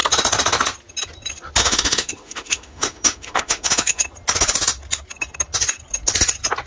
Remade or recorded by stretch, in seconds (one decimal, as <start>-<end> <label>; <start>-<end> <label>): 0.0-1.6 recorded; 1.6-4.0 remade; 4.0-6.7 recorded